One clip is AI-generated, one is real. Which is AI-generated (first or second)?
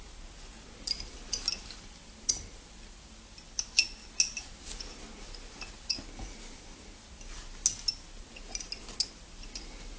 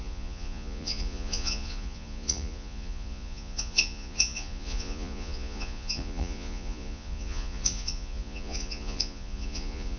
second